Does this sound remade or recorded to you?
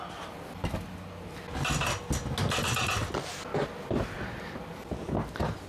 recorded